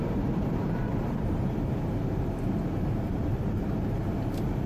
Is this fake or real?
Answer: fake